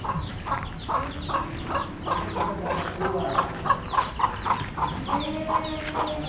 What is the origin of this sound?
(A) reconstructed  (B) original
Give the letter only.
B